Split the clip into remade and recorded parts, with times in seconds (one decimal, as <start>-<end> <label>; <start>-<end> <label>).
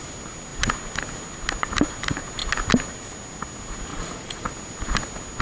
0.0-3.9 recorded; 3.9-4.5 remade; 4.5-5.4 recorded